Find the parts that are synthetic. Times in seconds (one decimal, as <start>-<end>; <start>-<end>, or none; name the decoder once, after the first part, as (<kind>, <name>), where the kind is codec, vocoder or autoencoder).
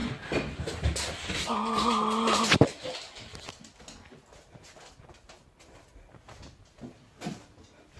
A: none